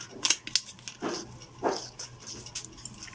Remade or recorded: recorded